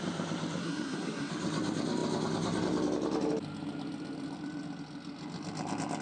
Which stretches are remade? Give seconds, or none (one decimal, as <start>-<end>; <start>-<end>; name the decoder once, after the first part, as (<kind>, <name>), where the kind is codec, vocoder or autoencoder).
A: 0.6-1.3 (codec, SNAC)

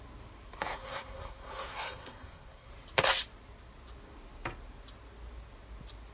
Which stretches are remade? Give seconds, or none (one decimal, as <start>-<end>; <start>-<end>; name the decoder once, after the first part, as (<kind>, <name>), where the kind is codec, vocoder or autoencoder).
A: 0.7-2.7 (codec, SNAC)